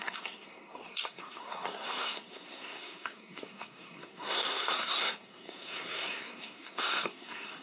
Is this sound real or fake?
fake